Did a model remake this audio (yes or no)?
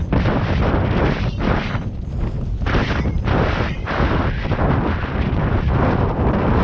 yes